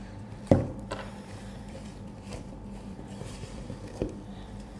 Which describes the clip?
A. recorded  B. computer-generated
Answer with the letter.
B